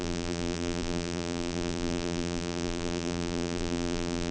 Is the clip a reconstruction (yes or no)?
yes